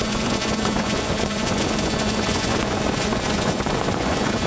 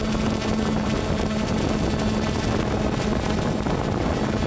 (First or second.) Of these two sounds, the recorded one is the second